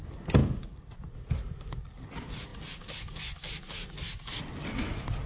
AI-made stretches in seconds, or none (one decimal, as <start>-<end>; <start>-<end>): none